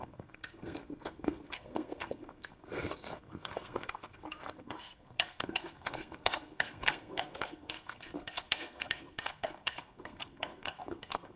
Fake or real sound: fake